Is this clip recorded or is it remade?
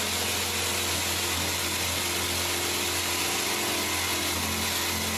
recorded